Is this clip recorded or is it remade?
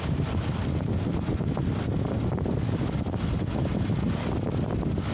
recorded